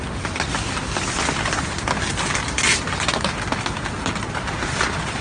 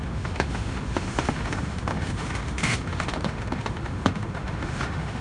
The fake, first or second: second